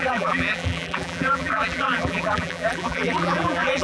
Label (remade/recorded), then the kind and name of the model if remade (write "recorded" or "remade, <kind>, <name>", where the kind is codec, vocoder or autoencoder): remade, vocoder, BigVGAN v2